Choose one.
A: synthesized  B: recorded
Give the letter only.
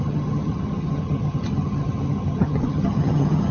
A